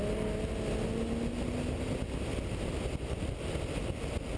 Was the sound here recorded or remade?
recorded